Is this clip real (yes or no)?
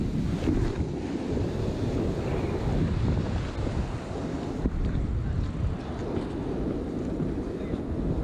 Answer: yes